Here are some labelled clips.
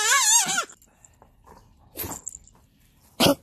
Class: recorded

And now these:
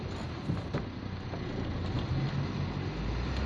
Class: recorded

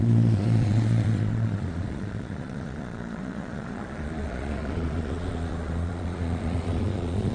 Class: remade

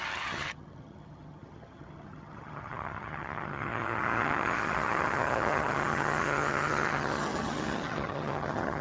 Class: remade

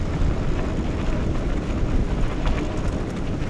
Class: recorded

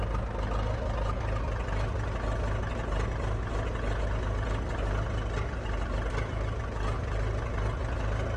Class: recorded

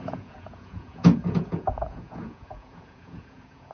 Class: remade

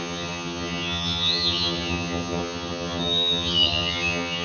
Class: remade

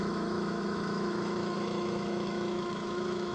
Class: remade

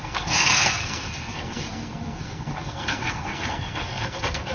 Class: remade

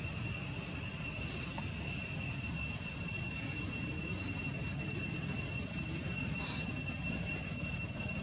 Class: recorded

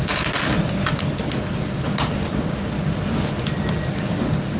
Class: recorded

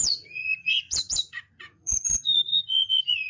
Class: remade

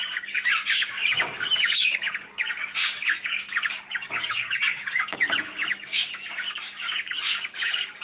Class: remade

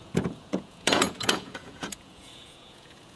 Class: remade